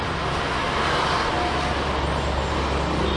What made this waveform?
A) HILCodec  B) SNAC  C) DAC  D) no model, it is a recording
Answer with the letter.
D